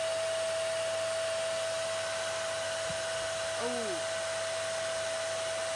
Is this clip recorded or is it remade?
recorded